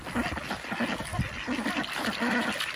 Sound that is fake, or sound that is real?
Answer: real